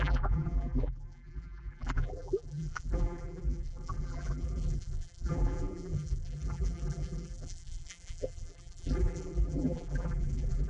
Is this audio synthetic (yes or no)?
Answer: yes